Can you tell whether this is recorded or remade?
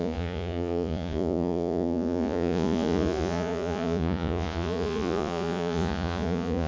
remade